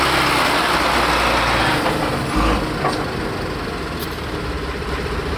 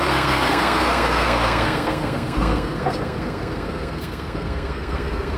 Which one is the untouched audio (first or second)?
first